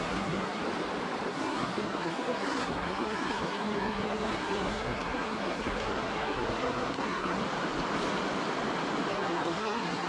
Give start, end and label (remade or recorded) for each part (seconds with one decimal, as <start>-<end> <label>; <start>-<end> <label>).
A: 0.0-0.6 remade; 0.6-1.3 recorded; 1.3-7.4 remade; 7.4-9.1 recorded; 9.1-10.1 remade